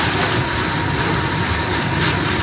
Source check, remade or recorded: recorded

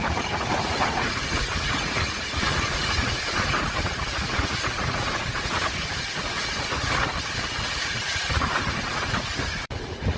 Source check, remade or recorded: remade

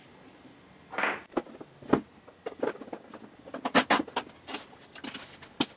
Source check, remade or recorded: recorded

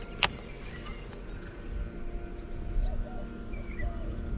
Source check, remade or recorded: recorded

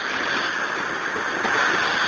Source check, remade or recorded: recorded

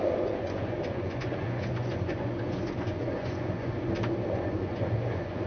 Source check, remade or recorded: remade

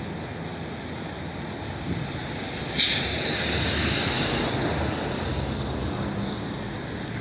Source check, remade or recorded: recorded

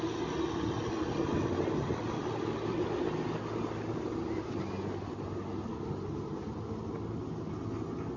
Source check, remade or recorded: recorded